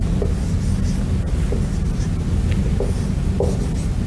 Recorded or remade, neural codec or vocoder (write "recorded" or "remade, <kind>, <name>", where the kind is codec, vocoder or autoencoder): recorded